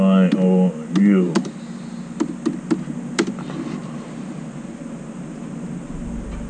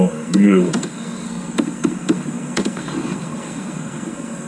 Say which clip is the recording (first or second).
first